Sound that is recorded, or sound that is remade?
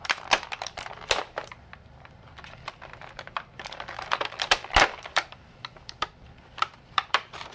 remade